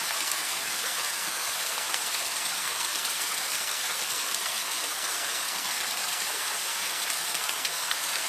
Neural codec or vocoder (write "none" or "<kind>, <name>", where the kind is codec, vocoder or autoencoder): codec, SNAC